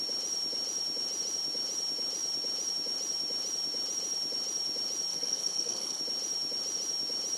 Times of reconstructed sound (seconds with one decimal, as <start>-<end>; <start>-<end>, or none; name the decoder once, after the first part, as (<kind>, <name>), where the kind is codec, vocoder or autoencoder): 5.1-6.0 (codec, SNAC)

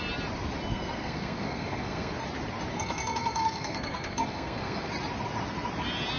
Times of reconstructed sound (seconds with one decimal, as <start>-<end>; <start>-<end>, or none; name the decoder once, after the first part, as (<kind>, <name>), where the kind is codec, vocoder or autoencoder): 0.7-2.1 (codec, SNAC); 2.7-4.9

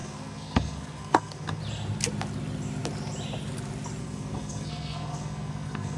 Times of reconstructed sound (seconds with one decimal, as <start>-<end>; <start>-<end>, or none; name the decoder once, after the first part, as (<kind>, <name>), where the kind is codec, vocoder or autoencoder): 0.0-1.6 (codec, SNAC); 4.0-6.0

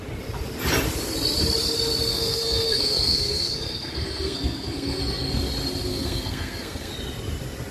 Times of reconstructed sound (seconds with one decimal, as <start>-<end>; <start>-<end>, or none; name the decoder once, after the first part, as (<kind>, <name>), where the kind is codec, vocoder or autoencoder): 2.1-5.0 (codec, SNAC); 5.9-6.9

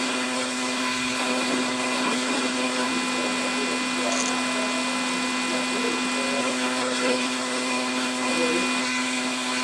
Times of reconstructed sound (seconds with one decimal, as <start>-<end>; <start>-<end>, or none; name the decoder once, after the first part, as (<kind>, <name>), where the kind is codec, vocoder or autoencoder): 0.0-2.9 (codec, SNAC); 6.4-8.3; 8.8-9.6